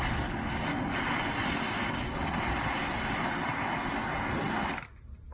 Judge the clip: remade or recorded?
recorded